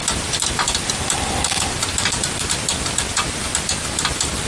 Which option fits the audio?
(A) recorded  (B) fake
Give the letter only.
A